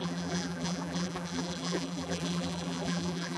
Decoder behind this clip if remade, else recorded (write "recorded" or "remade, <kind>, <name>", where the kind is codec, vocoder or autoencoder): remade, vocoder, BigVGAN v2